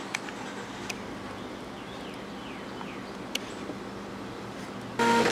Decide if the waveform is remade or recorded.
recorded